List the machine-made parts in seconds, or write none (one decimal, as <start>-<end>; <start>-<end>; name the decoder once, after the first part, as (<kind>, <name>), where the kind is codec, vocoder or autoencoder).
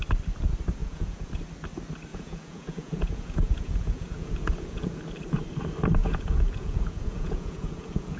0.8-1.3 (vocoder, Vocos); 2.1-5.0; 6.0-8.2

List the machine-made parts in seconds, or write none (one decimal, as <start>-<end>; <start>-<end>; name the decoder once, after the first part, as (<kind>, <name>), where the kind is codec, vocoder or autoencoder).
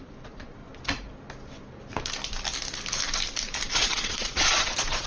0.0-0.6 (vocoder, Vocos); 3.7-5.1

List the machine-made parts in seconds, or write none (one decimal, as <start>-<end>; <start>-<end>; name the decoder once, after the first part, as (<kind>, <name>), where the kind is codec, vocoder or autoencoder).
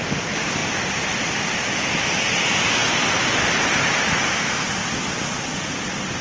none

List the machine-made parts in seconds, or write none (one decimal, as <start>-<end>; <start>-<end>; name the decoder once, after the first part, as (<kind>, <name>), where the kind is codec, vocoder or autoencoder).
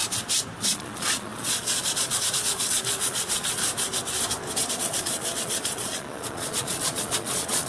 0.6-3.6 (vocoder, Vocos); 4.7-7.7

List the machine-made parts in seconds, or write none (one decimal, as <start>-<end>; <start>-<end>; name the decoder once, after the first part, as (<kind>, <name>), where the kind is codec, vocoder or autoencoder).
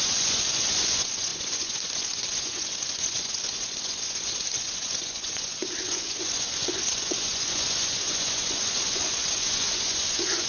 0.0-10.5 (vocoder, Vocos)